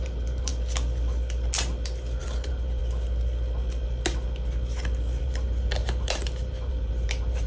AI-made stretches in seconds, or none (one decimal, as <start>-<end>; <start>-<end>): 0.0-0.5; 2.2-2.8; 5.2-7.5